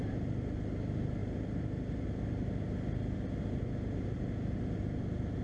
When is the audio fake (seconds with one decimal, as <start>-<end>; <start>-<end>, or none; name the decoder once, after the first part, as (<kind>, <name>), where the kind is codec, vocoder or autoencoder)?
none

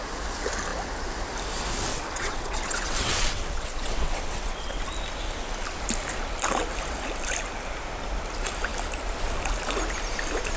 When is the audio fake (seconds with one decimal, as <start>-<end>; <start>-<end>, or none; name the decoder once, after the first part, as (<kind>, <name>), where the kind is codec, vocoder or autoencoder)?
1.9-4.8 (vocoder, WaveNeXt)

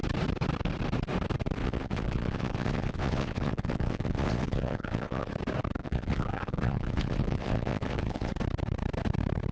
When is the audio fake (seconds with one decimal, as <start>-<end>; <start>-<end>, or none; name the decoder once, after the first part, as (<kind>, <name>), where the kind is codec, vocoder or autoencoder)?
1.6-5.3 (vocoder, WaveNeXt); 5.8-8.3

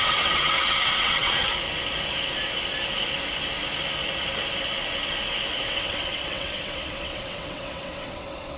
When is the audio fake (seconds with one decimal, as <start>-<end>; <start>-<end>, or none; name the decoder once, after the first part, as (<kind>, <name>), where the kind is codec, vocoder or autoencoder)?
0.0-1.5 (vocoder, WaveNeXt); 5.7-8.6

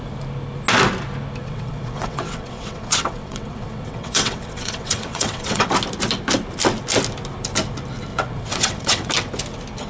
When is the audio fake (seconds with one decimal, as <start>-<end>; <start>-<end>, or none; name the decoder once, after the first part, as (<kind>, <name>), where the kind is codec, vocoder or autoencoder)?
1.4-5.7 (vocoder, WaveNeXt); 8.1-9.1

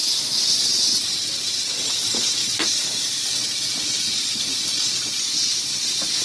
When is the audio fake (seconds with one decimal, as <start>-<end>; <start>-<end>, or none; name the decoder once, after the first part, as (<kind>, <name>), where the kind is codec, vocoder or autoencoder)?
0.5-2.4 (vocoder, WaveNeXt)

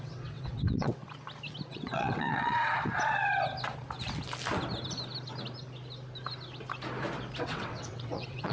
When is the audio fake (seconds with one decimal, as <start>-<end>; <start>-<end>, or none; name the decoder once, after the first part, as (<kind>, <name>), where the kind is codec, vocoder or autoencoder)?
0.0-1.0 (vocoder, WaveNeXt); 1.7-2.9; 7.4-8.5

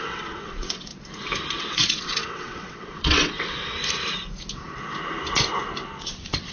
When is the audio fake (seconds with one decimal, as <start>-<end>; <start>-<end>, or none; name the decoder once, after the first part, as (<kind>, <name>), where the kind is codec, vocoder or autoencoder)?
0.0-0.9 (vocoder, WaveNeXt); 1.6-3.6; 6.0-6.5